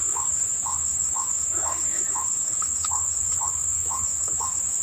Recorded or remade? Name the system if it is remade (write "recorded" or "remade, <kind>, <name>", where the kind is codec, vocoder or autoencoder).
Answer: remade, autoencoder, DAC-VAE